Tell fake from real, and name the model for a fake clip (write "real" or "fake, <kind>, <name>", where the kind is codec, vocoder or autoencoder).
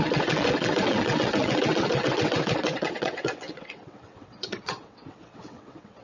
fake, vocoder, WaveNeXt